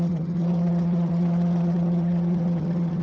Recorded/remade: remade